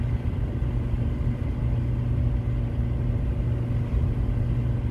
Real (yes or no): yes